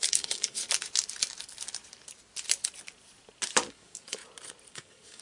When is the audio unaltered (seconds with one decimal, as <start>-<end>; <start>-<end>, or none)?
0.6-3.7; 4.2-4.7